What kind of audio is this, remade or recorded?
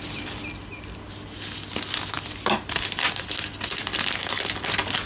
recorded